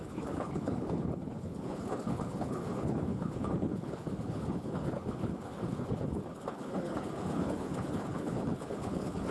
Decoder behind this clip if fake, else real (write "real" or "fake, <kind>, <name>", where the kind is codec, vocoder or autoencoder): fake, codec, HILCodec